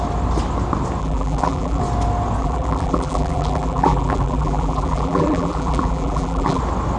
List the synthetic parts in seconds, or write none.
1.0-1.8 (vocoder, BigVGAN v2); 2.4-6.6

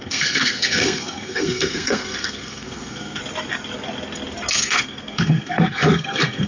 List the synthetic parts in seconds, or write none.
0.0-3.2 (codec, SNAC); 4.5-6.5